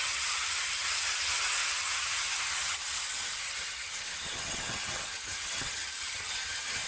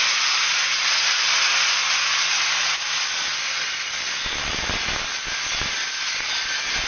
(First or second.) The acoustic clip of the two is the second